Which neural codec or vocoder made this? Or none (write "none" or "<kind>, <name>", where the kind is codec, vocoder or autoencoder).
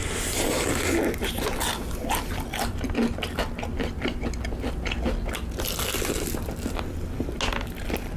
none